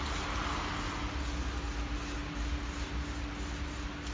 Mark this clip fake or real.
real